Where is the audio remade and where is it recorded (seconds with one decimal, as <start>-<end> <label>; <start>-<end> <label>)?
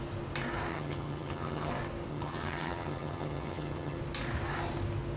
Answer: 0.0-0.7 recorded; 0.7-1.7 remade; 1.7-2.1 recorded; 2.1-4.0 remade; 4.0-5.2 recorded